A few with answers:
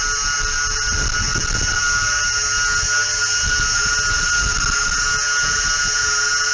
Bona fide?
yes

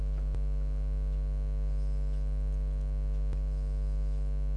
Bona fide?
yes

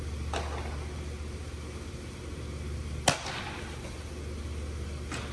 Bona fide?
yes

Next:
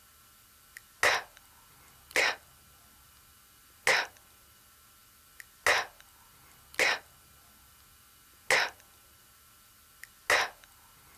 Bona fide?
yes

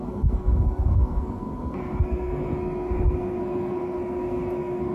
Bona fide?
no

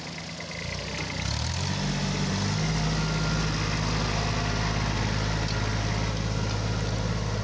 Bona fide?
yes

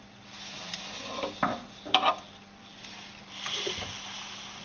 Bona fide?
yes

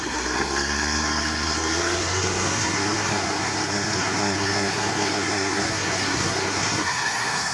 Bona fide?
no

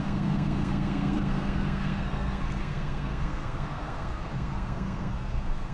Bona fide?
no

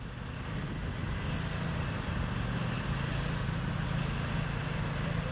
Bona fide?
yes